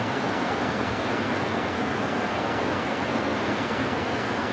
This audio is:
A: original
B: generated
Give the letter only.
B